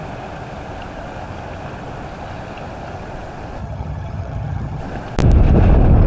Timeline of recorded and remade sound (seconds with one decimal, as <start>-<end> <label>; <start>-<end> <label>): 0.0-3.6 recorded; 3.6-4.8 remade; 4.8-6.1 recorded

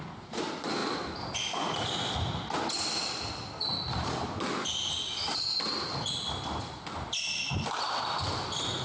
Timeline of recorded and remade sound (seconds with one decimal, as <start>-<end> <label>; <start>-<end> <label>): 0.0-8.8 recorded

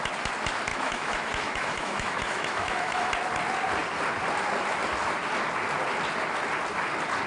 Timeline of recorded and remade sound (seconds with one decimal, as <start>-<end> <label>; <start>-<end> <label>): 0.0-0.7 recorded; 0.7-3.1 remade; 3.1-7.3 recorded

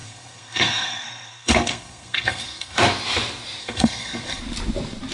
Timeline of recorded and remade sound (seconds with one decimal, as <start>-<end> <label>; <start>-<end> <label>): 0.0-2.8 remade; 2.8-3.6 recorded; 3.6-4.4 remade; 4.4-5.1 recorded

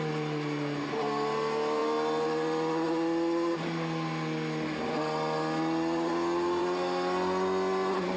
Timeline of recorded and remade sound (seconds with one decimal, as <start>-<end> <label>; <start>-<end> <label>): 0.0-8.2 recorded